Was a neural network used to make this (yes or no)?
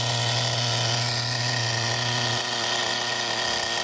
no